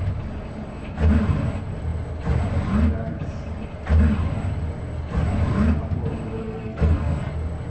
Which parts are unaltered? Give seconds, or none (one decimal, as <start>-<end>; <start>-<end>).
0.0-6.4; 7.3-7.7